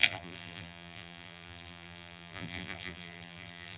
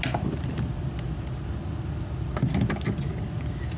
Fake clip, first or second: first